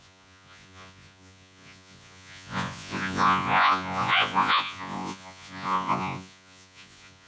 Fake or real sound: fake